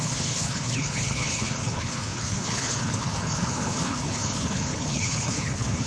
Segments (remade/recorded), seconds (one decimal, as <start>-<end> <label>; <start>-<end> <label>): 0.0-5.9 remade